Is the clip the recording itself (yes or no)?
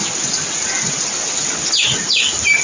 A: yes